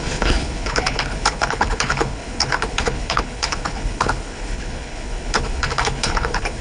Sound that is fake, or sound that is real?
fake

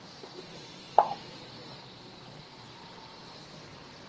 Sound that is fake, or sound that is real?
fake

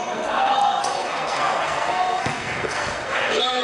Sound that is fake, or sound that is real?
fake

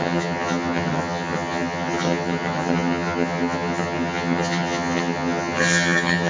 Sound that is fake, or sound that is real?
fake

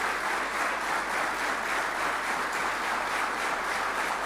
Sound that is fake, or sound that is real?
real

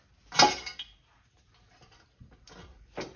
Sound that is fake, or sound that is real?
real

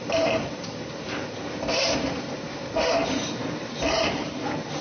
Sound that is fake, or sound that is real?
fake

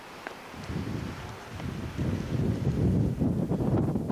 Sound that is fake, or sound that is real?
real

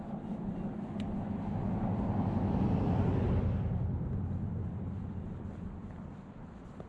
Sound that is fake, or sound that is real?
real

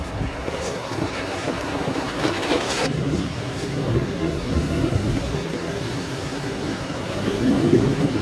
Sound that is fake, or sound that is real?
fake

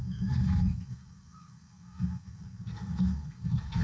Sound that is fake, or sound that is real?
fake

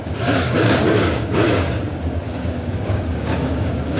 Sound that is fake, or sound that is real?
fake